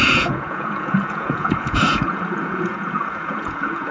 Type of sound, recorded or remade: remade